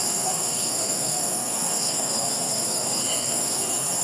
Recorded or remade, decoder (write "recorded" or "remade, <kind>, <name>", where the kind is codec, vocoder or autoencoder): remade, codec, SNAC